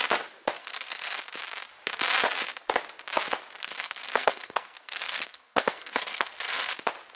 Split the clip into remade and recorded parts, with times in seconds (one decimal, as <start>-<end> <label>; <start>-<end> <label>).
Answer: 0.0-0.6 recorded; 0.6-1.2 remade; 1.2-3.6 recorded; 3.6-6.7 remade; 6.7-7.2 recorded